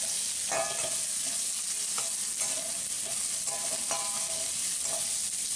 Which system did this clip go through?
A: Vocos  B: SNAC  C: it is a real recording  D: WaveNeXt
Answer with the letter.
C